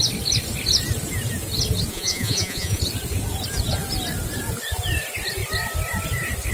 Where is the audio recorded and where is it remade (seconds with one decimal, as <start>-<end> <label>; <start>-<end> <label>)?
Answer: 0.0-1.9 recorded; 1.9-2.8 remade; 2.8-6.5 recorded